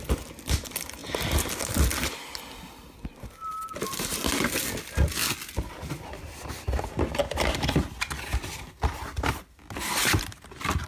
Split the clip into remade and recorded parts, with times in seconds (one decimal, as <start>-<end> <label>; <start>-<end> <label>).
0.0-3.8 recorded; 3.8-4.3 remade; 4.3-10.9 recorded